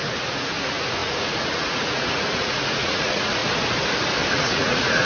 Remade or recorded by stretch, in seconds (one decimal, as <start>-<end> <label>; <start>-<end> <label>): 0.0-3.4 remade; 3.4-4.3 recorded; 4.3-5.1 remade